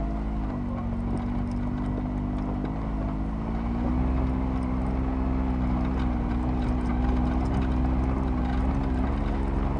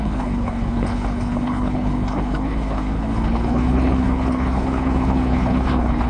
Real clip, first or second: first